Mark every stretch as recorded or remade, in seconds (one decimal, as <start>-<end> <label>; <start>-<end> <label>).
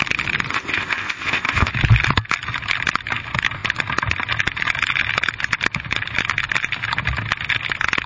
0.0-0.5 recorded; 0.5-1.7 remade; 1.7-8.1 recorded